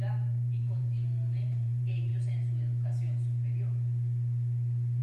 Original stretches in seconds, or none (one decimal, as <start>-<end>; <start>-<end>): 2.1-5.0